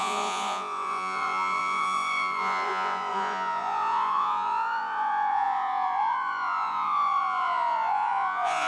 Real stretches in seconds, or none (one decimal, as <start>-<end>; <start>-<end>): none